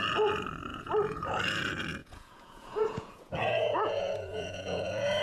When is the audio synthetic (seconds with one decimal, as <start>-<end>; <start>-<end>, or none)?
0.7-1.4; 2.0-5.2